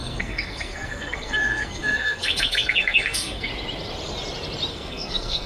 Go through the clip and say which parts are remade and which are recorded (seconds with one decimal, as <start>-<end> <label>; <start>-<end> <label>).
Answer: 0.0-3.5 remade; 3.5-4.7 recorded; 4.7-5.5 remade